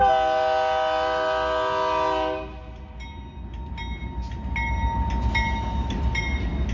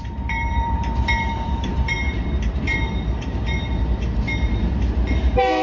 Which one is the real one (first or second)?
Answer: first